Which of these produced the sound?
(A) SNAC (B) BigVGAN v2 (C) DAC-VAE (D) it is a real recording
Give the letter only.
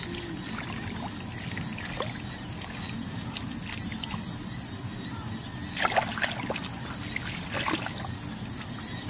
D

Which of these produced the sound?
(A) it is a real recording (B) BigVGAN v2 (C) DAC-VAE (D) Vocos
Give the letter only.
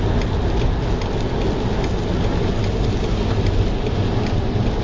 A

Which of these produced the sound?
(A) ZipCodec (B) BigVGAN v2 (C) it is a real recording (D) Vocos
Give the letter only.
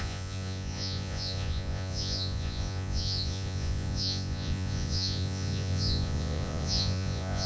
D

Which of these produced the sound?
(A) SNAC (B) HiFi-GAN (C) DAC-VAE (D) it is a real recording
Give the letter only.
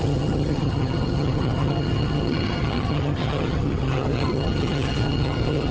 B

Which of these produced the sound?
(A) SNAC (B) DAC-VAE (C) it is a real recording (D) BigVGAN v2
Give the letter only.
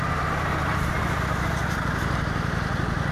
D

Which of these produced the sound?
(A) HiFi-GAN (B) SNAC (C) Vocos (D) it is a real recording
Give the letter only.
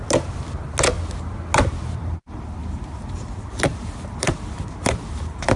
D